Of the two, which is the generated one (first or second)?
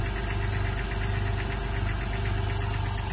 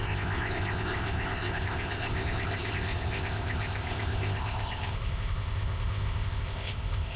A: second